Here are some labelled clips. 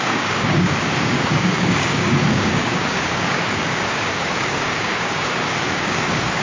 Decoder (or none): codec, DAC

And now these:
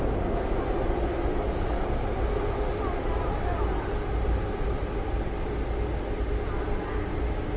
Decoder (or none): none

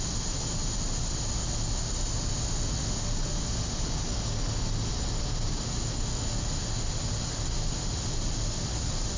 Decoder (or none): none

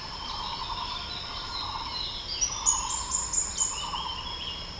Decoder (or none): none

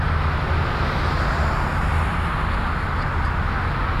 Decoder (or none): none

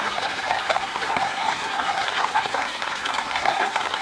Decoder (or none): codec, SNAC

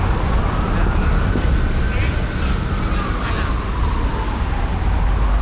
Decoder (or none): none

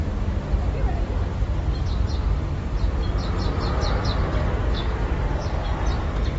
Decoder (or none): none